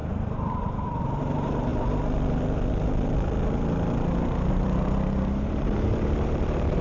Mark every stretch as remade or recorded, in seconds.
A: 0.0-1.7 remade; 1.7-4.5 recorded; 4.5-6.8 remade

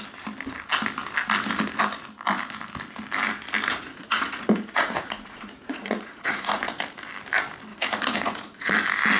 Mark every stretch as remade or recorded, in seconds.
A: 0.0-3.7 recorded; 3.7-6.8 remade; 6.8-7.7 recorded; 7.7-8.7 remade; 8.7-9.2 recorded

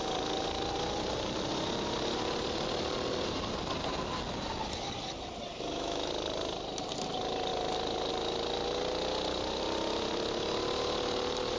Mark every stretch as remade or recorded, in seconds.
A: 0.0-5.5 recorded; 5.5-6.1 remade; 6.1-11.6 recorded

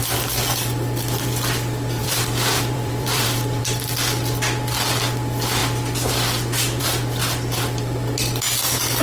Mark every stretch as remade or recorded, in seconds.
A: 0.0-2.0 recorded; 2.0-3.6 remade; 3.6-9.0 recorded

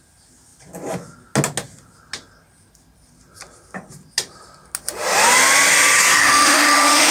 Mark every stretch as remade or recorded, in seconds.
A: 0.0-6.2 recorded; 6.2-7.1 remade

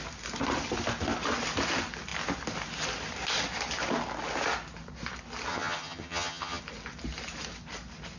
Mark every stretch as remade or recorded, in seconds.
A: 0.0-5.5 recorded; 5.5-6.6 remade; 6.6-8.2 recorded